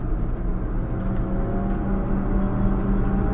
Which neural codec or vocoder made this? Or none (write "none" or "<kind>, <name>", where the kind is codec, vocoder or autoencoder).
none